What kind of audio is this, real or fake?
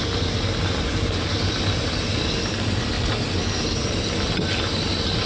real